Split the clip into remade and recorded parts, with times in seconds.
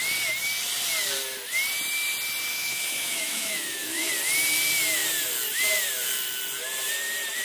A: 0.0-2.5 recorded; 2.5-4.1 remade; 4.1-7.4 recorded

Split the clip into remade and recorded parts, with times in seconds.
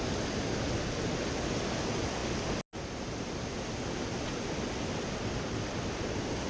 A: 0.0-6.5 recorded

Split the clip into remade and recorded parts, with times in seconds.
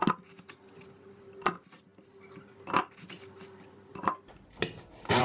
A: 0.0-5.2 recorded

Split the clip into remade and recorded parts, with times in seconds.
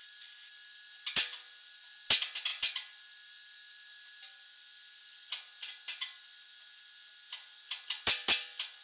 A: 0.0-8.8 recorded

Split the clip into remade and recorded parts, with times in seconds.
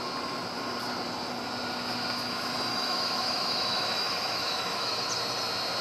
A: 0.0-2.7 recorded; 2.7-5.1 remade; 5.1-5.8 recorded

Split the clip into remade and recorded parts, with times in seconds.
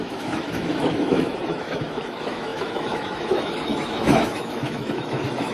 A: 0.0-5.5 remade